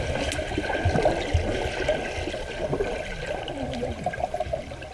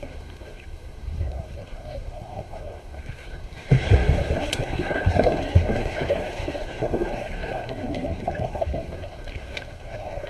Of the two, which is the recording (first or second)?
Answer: first